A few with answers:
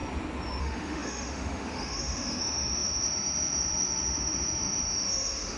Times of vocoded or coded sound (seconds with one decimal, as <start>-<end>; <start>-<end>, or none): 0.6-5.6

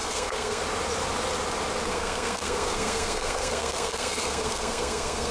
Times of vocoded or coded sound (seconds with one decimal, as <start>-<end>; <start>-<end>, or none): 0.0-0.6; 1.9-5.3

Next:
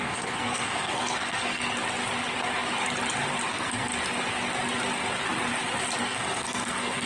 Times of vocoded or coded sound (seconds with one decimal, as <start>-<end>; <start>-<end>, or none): 0.0-1.6; 3.5-3.9; 6.0-7.1